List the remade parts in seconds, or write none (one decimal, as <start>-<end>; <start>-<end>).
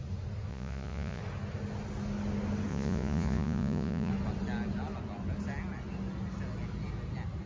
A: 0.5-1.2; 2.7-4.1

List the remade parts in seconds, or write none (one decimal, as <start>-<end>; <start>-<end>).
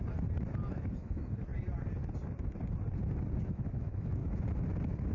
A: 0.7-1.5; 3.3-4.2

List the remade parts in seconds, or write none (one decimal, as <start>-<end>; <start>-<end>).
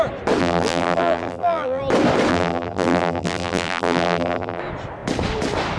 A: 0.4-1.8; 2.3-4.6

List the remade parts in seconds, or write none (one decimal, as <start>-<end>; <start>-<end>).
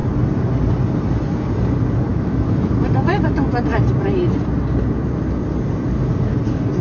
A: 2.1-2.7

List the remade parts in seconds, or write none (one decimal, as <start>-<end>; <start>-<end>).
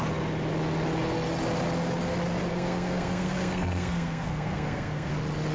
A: 2.5-5.1